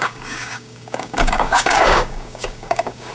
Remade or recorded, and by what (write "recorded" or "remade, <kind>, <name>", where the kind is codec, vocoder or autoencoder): remade, codec, DAC